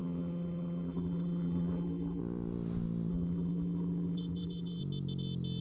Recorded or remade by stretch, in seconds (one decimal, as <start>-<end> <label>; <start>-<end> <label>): 0.0-2.2 remade; 2.2-3.1 recorded; 3.1-4.8 remade; 4.8-5.6 recorded